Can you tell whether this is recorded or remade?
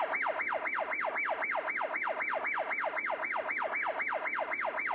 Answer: recorded